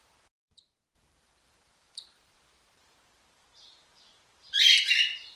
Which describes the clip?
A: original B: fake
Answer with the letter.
B